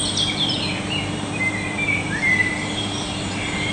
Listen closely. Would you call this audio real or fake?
fake